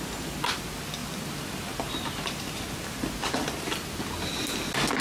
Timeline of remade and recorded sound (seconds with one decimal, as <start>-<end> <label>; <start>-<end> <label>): 0.0-5.0 recorded